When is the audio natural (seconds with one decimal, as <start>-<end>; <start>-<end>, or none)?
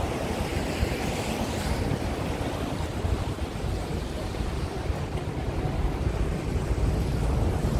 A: 0.5-3.5